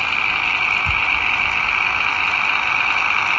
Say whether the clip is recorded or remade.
recorded